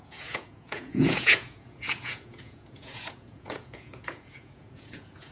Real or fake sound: fake